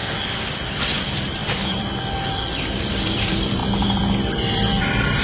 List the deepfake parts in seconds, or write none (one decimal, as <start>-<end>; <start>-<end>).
0.8-5.2